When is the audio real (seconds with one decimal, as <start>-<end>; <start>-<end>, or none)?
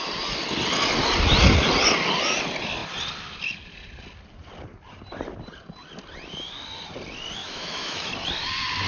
0.0-7.4; 8.1-8.9